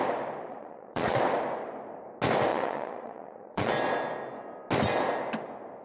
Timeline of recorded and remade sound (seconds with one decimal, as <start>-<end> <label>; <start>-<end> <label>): 0.0-0.5 recorded; 0.5-1.2 remade; 1.2-2.5 recorded; 2.5-3.7 remade; 3.7-5.8 recorded